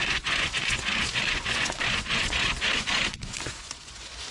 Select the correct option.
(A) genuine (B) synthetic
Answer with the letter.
B